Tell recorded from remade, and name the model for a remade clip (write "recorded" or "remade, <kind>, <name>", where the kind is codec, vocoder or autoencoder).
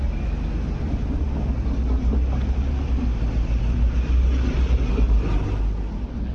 recorded